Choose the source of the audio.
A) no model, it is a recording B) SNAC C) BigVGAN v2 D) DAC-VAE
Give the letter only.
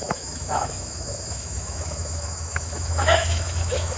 D